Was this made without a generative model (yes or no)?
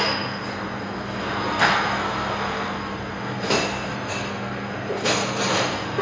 no